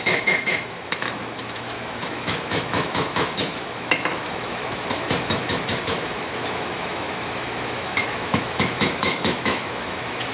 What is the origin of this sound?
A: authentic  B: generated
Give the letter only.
B